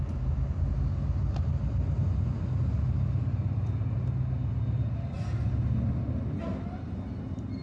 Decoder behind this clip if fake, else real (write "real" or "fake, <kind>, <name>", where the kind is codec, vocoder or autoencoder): real